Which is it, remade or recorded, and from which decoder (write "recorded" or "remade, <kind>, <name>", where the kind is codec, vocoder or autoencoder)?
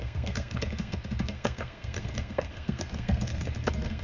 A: remade, codec, SNAC